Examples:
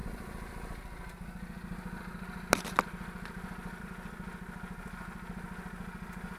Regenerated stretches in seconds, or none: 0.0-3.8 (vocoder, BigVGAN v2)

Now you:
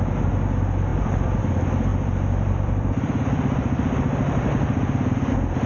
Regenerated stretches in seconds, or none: 0.9-1.4 (vocoder, BigVGAN v2); 1.9-5.3

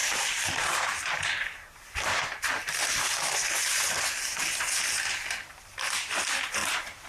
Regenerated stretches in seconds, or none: 0.0-3.3 (vocoder, BigVGAN v2); 5.2-5.9; 6.6-7.1

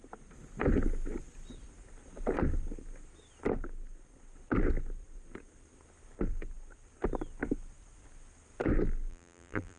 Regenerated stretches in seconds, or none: 9.1-9.8 (vocoder, BigVGAN v2)

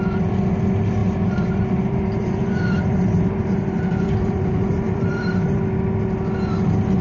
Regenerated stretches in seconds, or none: 1.0-5.2 (vocoder, BigVGAN v2)